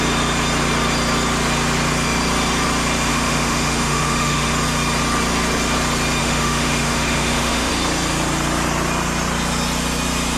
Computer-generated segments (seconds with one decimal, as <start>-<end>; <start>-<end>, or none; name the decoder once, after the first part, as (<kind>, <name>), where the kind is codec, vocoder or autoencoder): 3.1-4.5 (autoencoder, DAC-VAE); 6.2-7.7

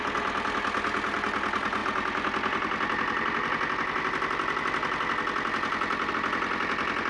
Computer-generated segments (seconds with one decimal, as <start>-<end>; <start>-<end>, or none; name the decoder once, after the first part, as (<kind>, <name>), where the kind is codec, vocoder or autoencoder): none

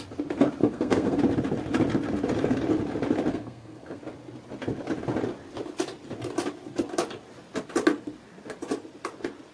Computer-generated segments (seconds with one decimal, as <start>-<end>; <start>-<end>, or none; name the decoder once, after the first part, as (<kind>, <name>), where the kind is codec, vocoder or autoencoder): 0.6-1.2 (codec, SNAC); 3.3-4.0

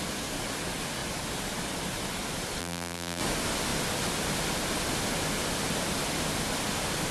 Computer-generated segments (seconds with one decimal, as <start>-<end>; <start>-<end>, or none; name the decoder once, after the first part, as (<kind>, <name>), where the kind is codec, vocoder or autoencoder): 2.6-3.2 (vocoder, BigVGAN v2)

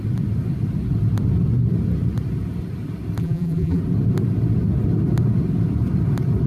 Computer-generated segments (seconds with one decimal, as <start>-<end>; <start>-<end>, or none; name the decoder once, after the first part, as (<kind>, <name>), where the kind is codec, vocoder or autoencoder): 3.2-3.8 (vocoder, BigVGAN v2)

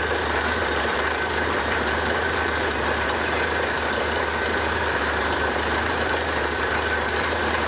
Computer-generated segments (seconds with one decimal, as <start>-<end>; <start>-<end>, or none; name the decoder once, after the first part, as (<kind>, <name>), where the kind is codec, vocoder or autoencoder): 0.0-7.7 (vocoder, BigVGAN v2)